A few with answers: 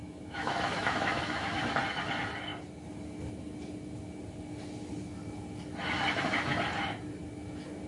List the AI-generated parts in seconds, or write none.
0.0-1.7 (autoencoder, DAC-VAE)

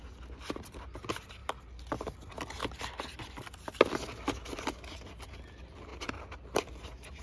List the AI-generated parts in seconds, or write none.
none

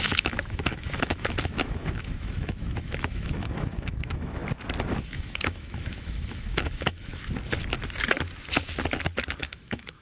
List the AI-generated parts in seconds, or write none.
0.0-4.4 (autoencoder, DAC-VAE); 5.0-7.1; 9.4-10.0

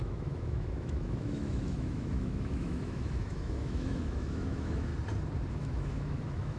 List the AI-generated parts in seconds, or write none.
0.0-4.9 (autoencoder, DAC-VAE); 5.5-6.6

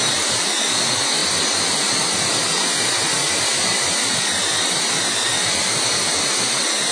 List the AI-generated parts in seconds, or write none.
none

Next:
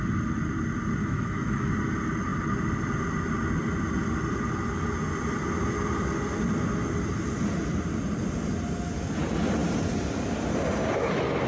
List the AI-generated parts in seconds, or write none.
1.0-1.7 (autoencoder, DAC-VAE)

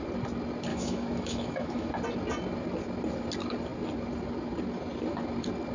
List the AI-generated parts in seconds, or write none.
0.7-1.9 (autoencoder, DAC-VAE)

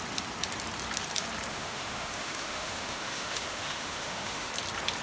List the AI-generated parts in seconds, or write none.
1.5-4.5 (autoencoder, DAC-VAE)